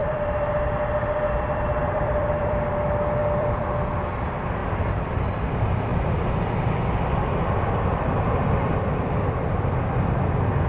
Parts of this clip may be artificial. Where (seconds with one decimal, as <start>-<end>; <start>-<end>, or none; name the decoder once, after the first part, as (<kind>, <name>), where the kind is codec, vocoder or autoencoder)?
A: 0.0-2.7 (vocoder, BigVGAN v2); 3.2-4.0; 4.6-5.2; 5.9-9.4